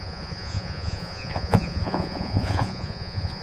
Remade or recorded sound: remade